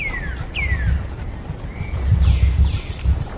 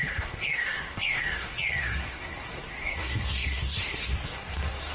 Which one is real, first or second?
first